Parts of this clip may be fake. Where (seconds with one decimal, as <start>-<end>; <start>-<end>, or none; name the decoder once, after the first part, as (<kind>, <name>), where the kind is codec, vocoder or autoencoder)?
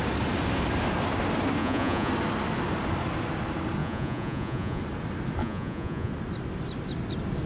1.6-2.1 (vocoder, Vocos); 3.8-4.8; 5.4-6.1